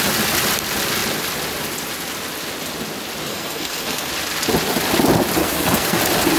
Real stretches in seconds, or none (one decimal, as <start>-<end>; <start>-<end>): 0.0-3.3; 4.1-5.4; 6.0-6.4